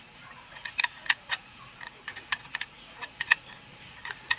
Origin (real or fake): fake